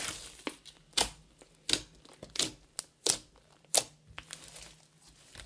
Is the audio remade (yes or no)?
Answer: no